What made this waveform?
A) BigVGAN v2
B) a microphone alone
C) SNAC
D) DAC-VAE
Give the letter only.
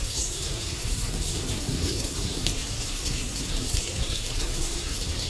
C